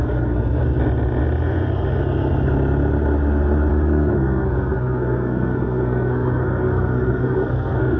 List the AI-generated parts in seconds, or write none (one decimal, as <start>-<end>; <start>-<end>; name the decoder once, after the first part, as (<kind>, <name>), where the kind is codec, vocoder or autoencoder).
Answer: 0.0-0.6 (codec, SNAC); 3.7-8.0